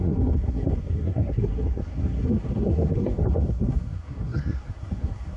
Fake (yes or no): yes